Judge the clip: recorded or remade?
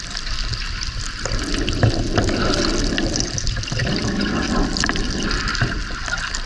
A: recorded